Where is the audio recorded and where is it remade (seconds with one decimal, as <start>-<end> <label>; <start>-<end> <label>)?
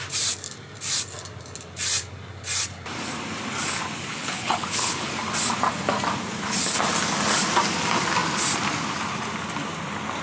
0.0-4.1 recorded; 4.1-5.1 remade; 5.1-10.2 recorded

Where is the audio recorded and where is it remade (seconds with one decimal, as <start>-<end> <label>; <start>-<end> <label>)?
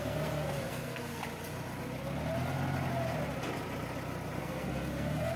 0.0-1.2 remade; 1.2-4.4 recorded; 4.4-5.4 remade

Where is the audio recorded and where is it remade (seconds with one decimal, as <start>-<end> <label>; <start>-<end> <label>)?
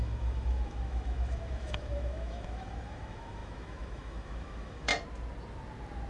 0.0-4.9 remade; 4.9-6.1 recorded